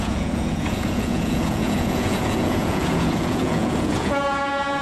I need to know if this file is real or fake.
fake